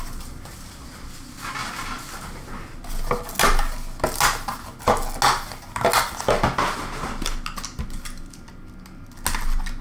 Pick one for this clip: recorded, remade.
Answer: recorded